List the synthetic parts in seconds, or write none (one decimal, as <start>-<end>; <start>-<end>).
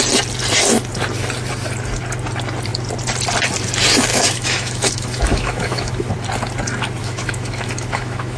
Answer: 4.1-6.1; 7.0-8.4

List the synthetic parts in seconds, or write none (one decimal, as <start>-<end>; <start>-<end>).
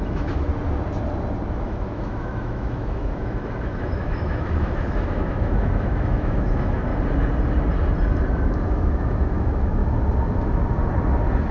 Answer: 0.0-0.5; 1.6-6.9; 8.4-9.8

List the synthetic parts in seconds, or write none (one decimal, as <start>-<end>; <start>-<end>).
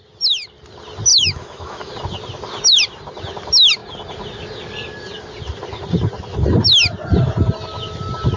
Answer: 1.1-1.9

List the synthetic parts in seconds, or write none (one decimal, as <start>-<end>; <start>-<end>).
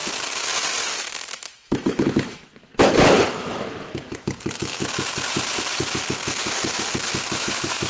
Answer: 0.8-2.7; 3.3-4.8; 7.4-7.9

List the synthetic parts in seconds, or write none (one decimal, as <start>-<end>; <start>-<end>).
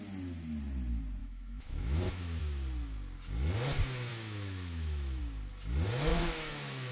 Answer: 1.2-2.4; 4.1-5.2; 6.1-6.9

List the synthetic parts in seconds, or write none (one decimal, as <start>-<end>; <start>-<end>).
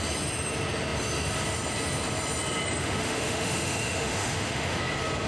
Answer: 2.8-4.8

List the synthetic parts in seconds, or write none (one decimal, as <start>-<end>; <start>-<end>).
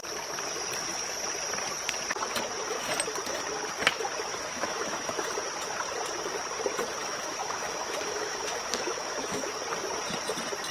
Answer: 4.3-5.3; 7.0-9.5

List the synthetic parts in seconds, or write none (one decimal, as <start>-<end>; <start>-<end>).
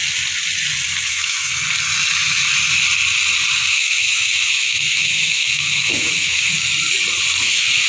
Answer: 1.1-1.5; 3.7-6.7; 7.4-7.9